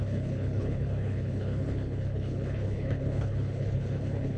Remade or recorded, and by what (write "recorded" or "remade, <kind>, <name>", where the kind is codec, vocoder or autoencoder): remade, codec, HILCodec